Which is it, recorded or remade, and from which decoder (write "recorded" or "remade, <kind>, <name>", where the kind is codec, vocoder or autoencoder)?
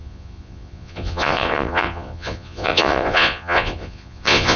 remade, vocoder, Vocos